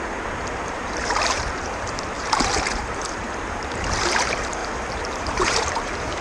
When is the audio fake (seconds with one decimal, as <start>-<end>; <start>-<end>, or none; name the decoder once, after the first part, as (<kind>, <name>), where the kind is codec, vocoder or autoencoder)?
0.0-6.2 (vocoder, BigVGAN v2)